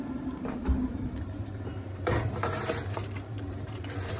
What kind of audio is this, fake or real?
fake